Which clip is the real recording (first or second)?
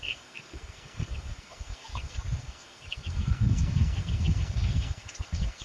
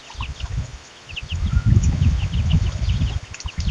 second